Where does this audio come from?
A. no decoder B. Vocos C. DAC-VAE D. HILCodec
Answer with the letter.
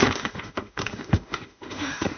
C